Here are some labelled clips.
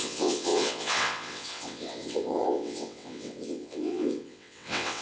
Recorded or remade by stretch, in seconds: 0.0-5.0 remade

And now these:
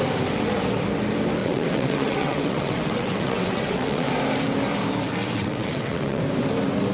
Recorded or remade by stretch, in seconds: 0.0-1.4 recorded; 1.4-4.1 remade; 4.1-5.2 recorded; 5.2-6.2 remade; 6.2-6.9 recorded

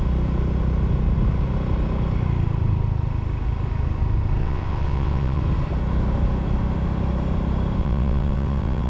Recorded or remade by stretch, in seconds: 0.0-4.4 recorded; 4.4-5.4 remade; 5.4-7.8 recorded; 7.8-8.9 remade

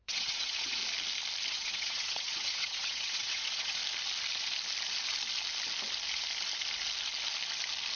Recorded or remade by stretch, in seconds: 0.0-0.8 remade; 0.8-1.5 recorded; 1.5-3.8 remade; 3.8-8.0 recorded

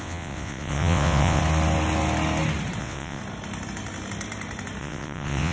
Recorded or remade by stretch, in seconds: 0.0-1.4 remade; 1.4-2.8 recorded; 2.8-3.2 remade; 3.2-4.8 recorded; 4.8-5.5 remade

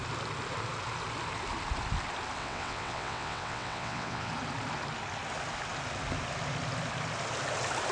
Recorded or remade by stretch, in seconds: 0.0-2.4 recorded; 2.4-4.3 remade; 4.3-7.9 recorded

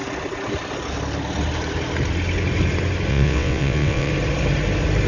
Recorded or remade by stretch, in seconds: 0.0-3.1 recorded; 3.1-4.1 remade; 4.1-5.1 recorded

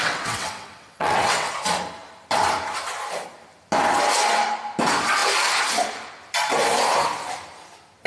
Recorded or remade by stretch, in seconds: 0.0-1.5 remade; 1.5-8.1 recorded